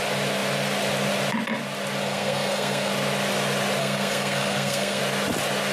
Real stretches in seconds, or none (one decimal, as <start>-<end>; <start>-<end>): 0.0-2.0; 2.9-3.8; 5.0-5.7